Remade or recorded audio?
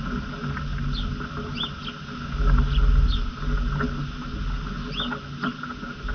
recorded